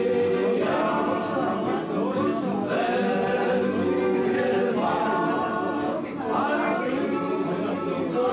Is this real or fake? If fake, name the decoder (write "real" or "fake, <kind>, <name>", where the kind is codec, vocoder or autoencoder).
real